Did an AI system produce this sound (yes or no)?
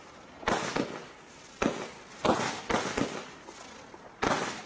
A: no